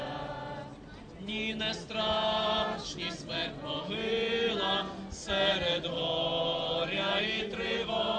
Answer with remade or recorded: recorded